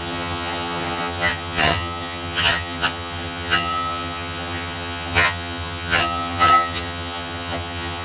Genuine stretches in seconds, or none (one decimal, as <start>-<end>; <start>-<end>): none